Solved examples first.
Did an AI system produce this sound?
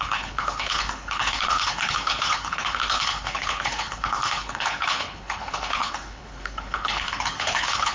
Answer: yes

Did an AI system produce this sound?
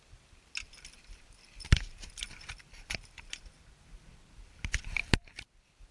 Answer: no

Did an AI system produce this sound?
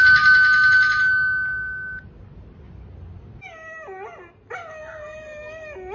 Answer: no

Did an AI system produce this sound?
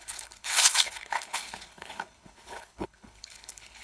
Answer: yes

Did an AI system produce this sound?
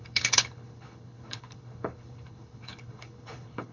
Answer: yes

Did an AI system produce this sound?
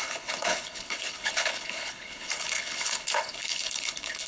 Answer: yes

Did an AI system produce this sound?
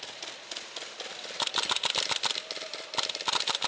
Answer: no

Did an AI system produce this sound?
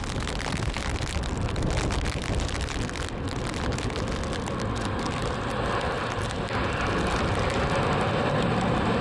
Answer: no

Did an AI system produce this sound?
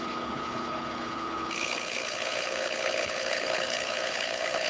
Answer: yes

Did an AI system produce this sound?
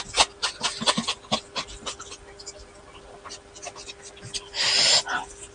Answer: no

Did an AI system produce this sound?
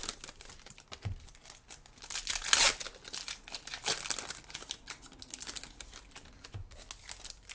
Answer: no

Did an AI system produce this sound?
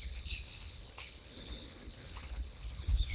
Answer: yes